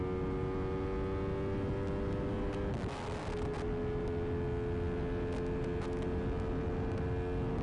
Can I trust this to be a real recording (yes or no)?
yes